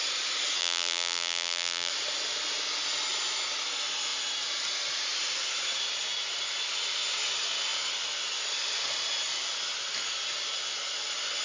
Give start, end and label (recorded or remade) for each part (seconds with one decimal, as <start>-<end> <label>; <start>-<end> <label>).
0.0-0.6 recorded; 0.6-1.9 remade; 1.9-11.4 recorded